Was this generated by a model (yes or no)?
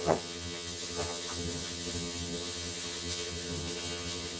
yes